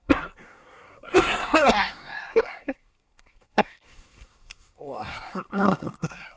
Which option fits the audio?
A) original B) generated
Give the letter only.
B